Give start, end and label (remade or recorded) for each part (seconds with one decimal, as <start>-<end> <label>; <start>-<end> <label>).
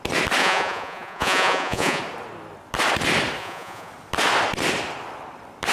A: 0.0-0.4 recorded; 0.4-2.0 remade; 2.0-3.4 recorded; 3.4-3.9 remade; 3.9-5.7 recorded